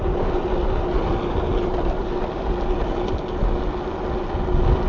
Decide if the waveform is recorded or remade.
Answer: recorded